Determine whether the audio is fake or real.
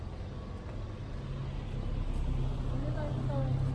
real